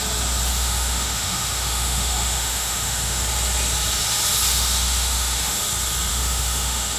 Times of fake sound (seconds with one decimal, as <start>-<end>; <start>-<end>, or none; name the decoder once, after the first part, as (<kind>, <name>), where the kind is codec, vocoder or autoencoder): 0.5-3.2 (autoencoder, DAC-VAE); 4.5-5.6; 6.1-7.0